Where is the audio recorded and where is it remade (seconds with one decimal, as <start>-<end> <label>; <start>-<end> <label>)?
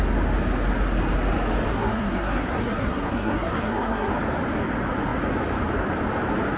0.0-1.7 recorded; 1.7-4.1 remade; 4.1-6.6 recorded